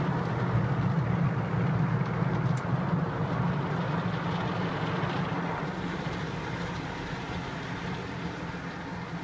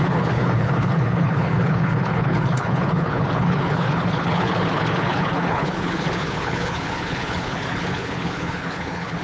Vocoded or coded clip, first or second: second